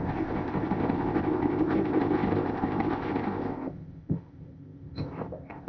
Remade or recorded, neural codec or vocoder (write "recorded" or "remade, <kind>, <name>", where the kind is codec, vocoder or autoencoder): remade, codec, ZipCodec